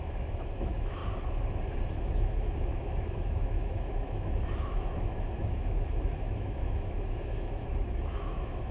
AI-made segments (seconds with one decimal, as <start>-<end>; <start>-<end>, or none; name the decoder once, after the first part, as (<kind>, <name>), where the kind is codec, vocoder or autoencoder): 0.0-1.0 (autoencoder, DAC-VAE); 1.9-8.7

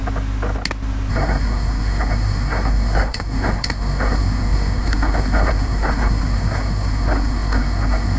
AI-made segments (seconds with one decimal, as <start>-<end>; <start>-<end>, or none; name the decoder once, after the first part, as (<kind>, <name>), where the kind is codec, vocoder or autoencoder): 1.1-8.2 (codec, SNAC)

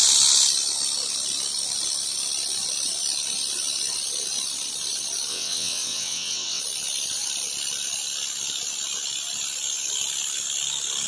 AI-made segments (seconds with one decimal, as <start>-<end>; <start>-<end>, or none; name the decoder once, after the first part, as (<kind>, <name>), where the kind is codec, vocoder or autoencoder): 5.3-6.6 (vocoder, WaveNeXt)

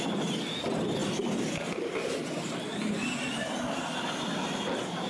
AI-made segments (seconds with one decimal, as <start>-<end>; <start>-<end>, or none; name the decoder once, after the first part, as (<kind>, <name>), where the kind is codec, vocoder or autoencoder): none